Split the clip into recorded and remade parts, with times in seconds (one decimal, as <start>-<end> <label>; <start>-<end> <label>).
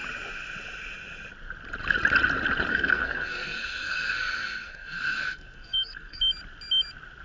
0.0-2.7 recorded; 2.7-6.2 remade; 6.2-7.2 recorded